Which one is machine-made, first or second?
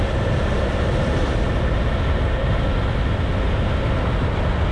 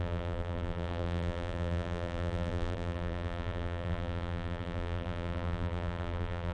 second